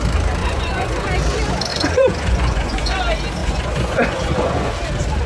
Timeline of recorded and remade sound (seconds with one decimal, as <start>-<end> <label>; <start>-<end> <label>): 0.0-0.4 recorded; 0.4-1.1 remade; 1.1-1.7 recorded; 1.7-3.0 remade; 3.0-3.4 recorded; 3.4-4.7 remade; 4.7-5.3 recorded

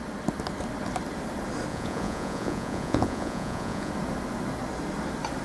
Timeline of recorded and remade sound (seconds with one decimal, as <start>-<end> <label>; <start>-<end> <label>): 0.0-1.7 recorded; 1.7-3.9 remade; 3.9-5.4 recorded

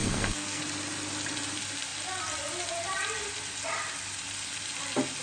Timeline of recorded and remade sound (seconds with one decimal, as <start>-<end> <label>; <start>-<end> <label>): 0.0-0.6 remade; 0.6-5.2 recorded